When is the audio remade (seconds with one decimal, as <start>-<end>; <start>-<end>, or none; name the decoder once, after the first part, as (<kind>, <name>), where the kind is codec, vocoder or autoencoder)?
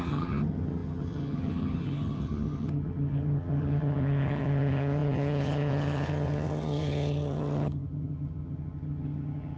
0.0-9.6 (vocoder, HiFi-GAN)